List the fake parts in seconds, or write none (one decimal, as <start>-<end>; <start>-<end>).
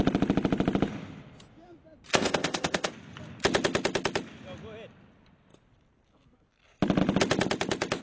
2.1-2.9